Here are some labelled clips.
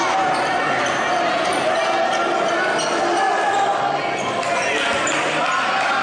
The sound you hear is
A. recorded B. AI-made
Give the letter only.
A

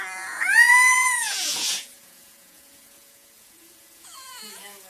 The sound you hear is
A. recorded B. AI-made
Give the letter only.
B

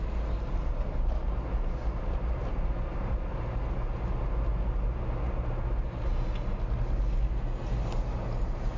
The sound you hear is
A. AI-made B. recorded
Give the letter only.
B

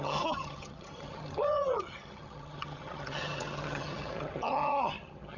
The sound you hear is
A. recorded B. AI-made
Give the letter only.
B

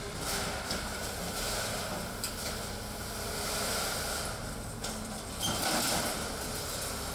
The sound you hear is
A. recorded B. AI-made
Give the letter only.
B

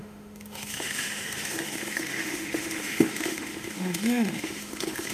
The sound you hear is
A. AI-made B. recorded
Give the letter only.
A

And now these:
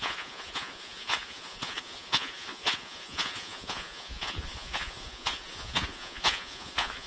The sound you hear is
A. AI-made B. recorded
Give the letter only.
A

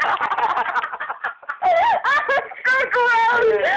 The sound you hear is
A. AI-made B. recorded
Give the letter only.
B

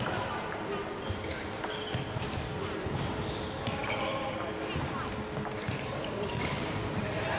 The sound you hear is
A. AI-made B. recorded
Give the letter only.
B